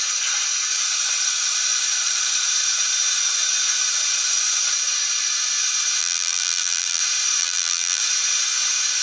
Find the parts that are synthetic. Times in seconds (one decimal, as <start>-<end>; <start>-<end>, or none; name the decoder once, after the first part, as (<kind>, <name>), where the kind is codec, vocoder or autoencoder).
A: 6.0-7.0 (vocoder, BigVGAN v2); 7.4-8.0